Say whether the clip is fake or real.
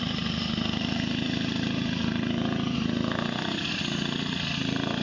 fake